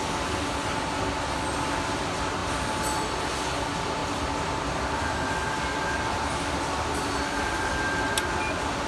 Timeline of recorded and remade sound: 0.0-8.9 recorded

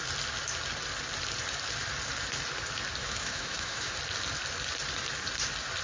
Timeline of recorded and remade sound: 0.0-3.0 recorded; 3.0-3.9 remade; 3.9-5.8 recorded

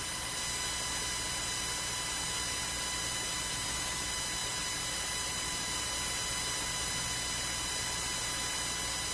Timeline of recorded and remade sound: 0.0-3.5 recorded; 3.5-4.0 remade; 4.0-9.1 recorded

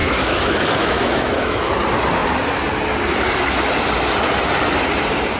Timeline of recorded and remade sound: 0.0-1.7 remade; 1.7-5.4 recorded

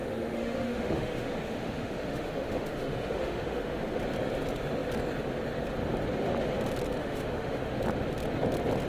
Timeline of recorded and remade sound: 0.0-4.0 remade; 4.0-7.0 recorded; 7.0-7.8 remade; 7.8-8.9 recorded

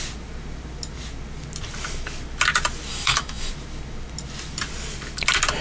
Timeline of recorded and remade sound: 0.0-2.9 recorded; 2.9-3.5 remade; 3.5-5.6 recorded

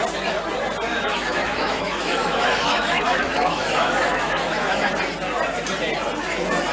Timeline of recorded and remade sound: 0.0-0.9 recorded; 0.9-4.9 remade; 4.9-6.7 recorded